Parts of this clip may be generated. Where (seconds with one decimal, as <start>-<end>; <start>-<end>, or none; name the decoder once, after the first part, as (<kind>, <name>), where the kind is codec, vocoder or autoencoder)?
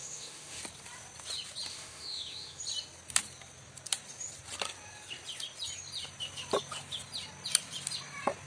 0.0-0.6 (autoencoder, DAC-VAE); 1.7-2.6